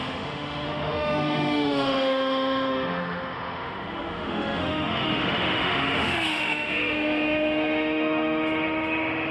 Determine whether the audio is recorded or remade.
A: remade